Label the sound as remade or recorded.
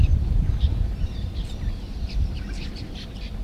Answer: remade